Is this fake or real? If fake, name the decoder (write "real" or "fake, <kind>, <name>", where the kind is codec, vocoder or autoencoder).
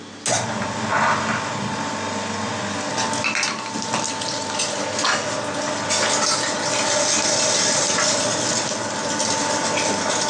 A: real